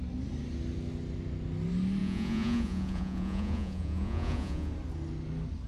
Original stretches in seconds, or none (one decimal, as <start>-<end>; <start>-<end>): 0.0-2.0; 4.7-5.7